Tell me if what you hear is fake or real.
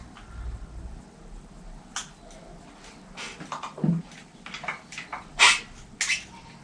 real